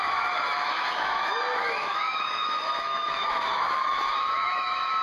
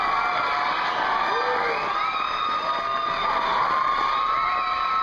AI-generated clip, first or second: first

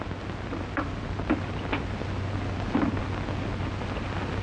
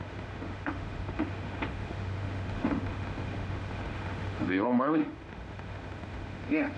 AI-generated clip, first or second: second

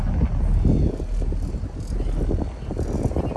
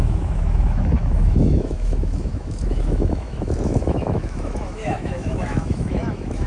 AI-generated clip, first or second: second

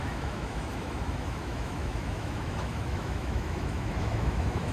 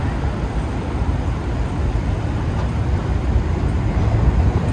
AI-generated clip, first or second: first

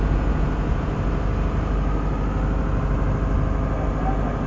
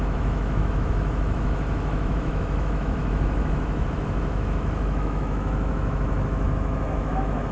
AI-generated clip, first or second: second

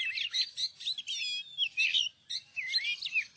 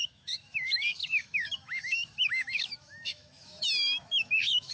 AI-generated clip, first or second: second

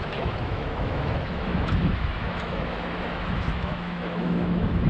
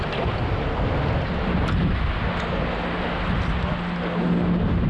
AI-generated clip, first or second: first